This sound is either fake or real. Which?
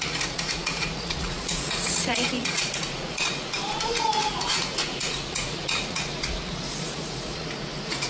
fake